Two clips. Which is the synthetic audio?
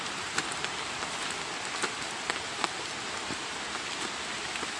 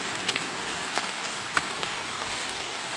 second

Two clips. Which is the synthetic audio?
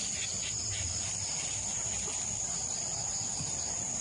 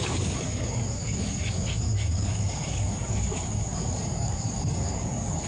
second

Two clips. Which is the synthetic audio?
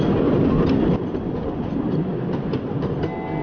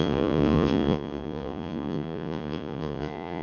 second